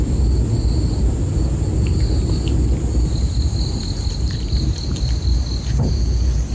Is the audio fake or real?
real